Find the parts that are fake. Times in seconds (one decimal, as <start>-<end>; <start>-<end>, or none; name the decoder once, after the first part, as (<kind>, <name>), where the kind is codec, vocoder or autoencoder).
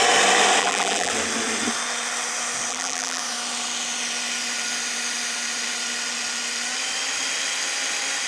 0.6-1.1 (vocoder, BigVGAN v2); 2.7-3.2